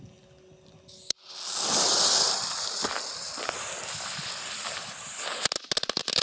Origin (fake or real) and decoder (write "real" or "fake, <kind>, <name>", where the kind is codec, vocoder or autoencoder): real